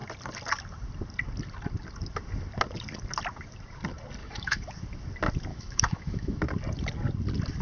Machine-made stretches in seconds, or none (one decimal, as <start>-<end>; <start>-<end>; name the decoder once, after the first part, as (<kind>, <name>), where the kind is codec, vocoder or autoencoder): 4.2-4.7 (autoencoder, DAC-VAE); 5.5-6.4